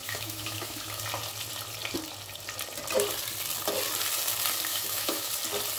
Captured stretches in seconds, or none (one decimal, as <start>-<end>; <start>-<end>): 1.0-4.7; 5.3-5.8